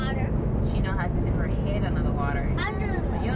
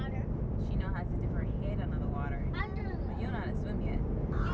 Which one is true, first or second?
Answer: first